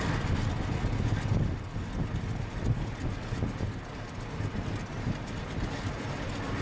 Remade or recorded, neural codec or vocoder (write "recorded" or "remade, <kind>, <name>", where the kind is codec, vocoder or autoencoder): recorded